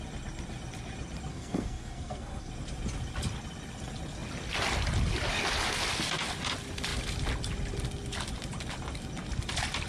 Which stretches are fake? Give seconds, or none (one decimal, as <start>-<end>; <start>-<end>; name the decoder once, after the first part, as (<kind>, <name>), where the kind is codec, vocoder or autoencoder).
1.3-2.5 (codec, SNAC)